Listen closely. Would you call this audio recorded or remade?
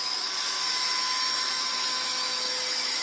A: remade